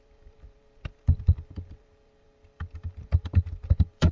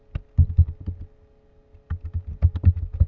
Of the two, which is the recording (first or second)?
second